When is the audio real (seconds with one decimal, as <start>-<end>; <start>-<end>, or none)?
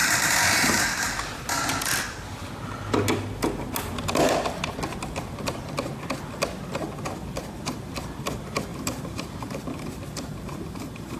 0.0-8.7